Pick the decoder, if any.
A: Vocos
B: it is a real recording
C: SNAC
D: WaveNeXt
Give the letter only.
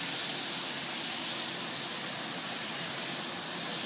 B